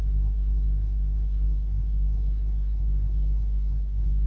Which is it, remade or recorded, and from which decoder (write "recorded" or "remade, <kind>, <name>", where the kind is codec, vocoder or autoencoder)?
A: remade, codec, SNAC